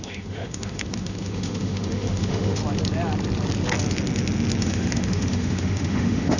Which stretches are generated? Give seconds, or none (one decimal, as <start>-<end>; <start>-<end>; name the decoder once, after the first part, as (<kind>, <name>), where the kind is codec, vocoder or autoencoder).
0.0-2.6 (autoencoder, DAC-VAE); 4.6-6.4